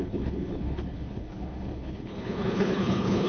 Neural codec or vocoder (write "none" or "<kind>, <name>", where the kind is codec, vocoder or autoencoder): codec, HILCodec